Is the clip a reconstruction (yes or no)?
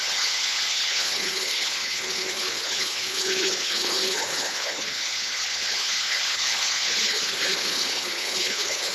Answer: yes